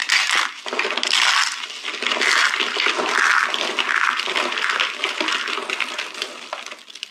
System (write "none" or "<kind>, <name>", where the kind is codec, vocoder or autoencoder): none